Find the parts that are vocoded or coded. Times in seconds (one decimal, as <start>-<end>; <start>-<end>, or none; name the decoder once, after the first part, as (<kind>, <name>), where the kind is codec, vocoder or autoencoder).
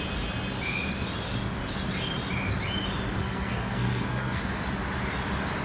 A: 3.2-4.4 (codec, SNAC)